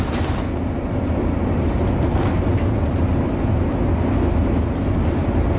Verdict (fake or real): real